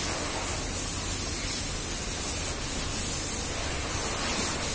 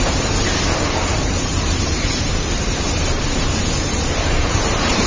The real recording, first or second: first